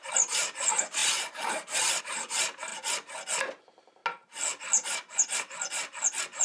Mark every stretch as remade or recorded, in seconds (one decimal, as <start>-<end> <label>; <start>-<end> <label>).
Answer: 0.0-2.7 remade; 2.7-3.6 recorded; 3.6-4.0 remade; 4.0-6.4 recorded